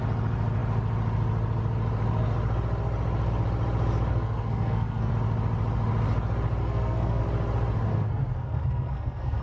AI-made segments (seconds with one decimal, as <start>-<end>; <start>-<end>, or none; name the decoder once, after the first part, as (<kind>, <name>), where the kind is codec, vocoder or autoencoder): 4.1-5.1 (codec, SNAC); 6.6-7.2; 7.9-9.4